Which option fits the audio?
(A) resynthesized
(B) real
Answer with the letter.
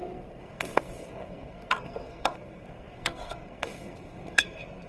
A